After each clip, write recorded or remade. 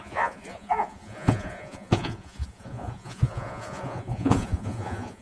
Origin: remade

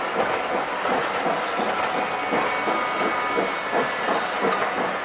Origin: recorded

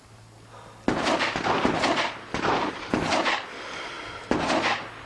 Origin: recorded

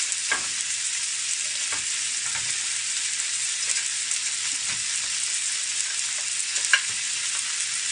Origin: recorded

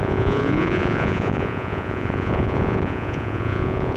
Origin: remade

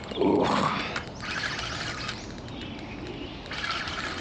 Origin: recorded